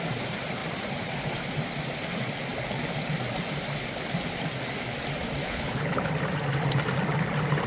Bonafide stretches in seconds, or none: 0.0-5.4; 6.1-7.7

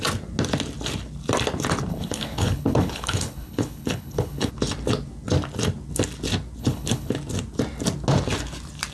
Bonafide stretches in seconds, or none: 0.0-1.9; 4.5-6.6; 7.1-8.9

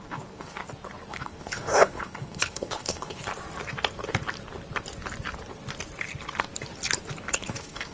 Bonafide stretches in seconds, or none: 0.6-1.1; 3.3-7.3

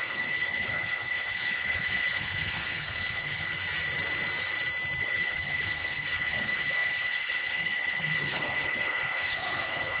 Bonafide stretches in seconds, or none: 3.6-5.0